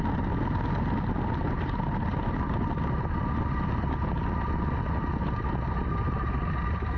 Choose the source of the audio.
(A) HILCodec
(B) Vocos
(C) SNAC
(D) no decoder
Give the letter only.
D